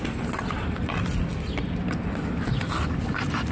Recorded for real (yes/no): yes